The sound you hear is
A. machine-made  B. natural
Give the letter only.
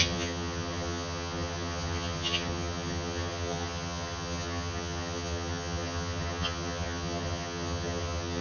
A